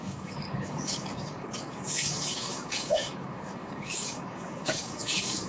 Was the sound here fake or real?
fake